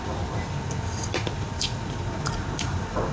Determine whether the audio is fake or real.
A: real